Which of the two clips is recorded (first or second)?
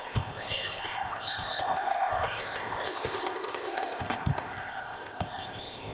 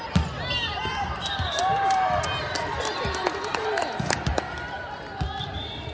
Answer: second